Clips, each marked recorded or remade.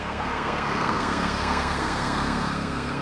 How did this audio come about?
remade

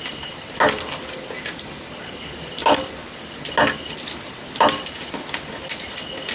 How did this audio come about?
recorded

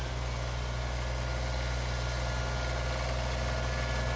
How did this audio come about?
recorded